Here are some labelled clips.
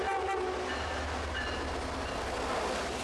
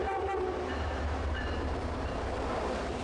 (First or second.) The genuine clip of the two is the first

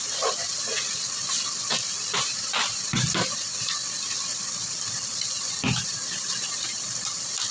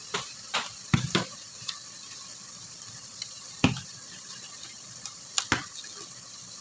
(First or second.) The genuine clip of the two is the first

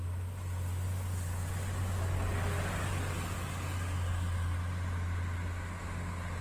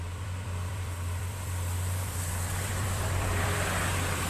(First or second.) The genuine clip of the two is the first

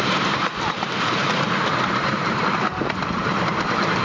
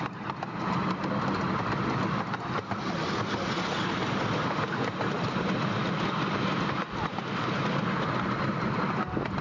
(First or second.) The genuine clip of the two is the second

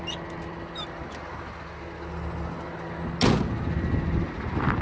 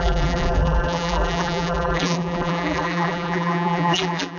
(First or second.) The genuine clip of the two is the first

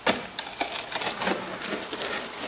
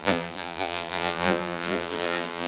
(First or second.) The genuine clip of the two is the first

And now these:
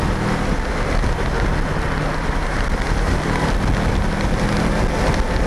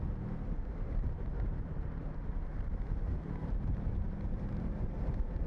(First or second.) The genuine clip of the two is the first